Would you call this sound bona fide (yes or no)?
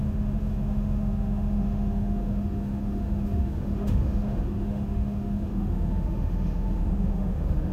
no